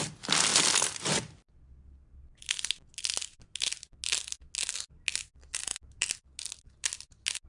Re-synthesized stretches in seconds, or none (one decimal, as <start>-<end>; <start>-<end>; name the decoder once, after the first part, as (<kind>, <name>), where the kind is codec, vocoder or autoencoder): none